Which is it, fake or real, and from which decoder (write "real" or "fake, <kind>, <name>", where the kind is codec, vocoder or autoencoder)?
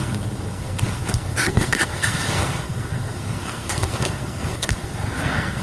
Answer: fake, codec, SNAC